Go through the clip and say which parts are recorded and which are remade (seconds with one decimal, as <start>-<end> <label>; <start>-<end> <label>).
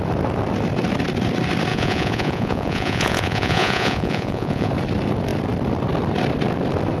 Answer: 0.0-1.7 recorded; 1.7-4.7 remade; 4.7-7.0 recorded